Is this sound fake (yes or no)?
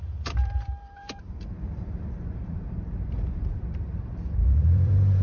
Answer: yes